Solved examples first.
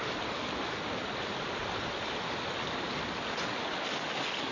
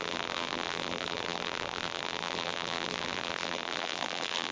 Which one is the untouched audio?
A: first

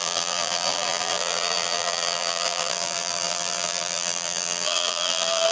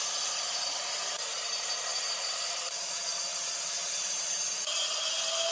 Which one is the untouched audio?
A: second